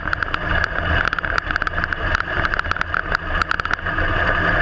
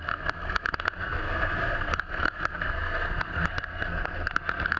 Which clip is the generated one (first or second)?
second